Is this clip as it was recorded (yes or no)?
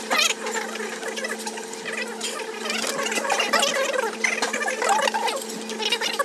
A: yes